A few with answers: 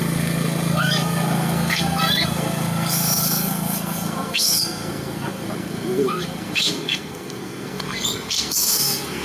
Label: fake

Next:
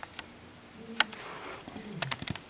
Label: real